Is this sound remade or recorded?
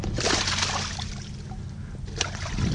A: recorded